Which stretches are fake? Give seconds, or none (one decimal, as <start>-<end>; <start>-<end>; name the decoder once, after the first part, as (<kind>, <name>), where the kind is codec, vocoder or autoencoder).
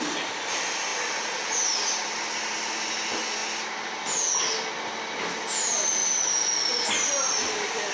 none